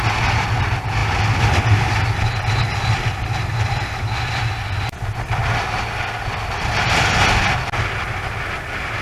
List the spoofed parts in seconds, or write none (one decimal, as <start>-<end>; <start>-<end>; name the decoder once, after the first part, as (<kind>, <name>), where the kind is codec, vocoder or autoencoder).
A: none